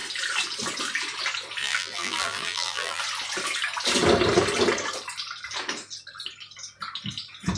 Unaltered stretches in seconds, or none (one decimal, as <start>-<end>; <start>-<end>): 0.0-1.6; 3.0-7.6